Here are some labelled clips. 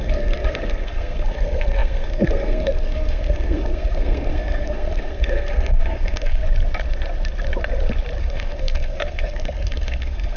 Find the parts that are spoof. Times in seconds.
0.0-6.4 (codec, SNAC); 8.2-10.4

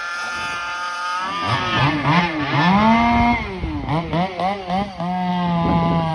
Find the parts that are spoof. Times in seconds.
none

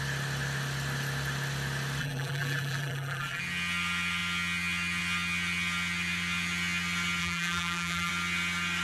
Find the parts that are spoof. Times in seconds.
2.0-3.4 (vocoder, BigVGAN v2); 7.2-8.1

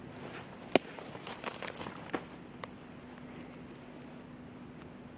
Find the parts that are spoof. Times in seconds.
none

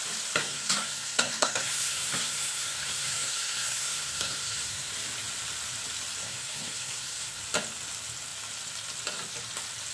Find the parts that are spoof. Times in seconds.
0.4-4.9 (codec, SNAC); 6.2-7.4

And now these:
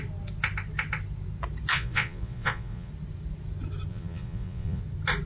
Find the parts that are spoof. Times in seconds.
1.7-2.9 (vocoder, Vocos); 3.9-4.8